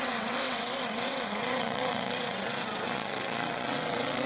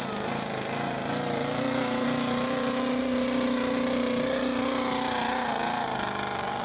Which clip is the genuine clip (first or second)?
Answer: second